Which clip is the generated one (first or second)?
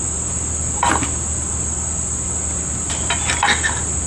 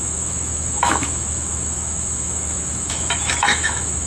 second